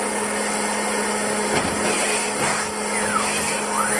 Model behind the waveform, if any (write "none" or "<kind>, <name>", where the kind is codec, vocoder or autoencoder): none